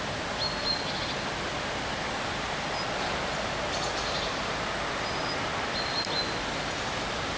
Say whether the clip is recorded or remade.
recorded